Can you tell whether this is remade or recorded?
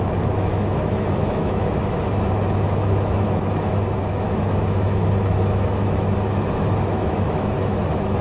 remade